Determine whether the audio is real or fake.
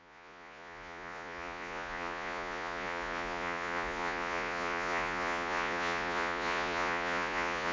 fake